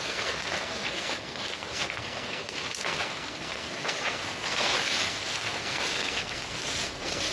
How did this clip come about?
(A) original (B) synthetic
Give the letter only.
B